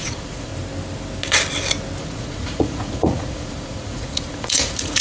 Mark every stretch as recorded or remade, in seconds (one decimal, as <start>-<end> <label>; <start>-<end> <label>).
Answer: 0.0-0.5 remade; 0.5-2.0 recorded; 2.0-5.0 remade